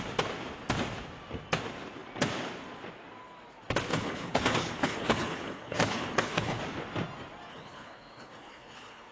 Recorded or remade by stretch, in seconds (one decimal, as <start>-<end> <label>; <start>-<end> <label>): 0.0-3.9 recorded; 3.9-6.6 remade; 6.6-7.5 recorded; 7.5-9.1 remade